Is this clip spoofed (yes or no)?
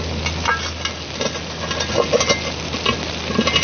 no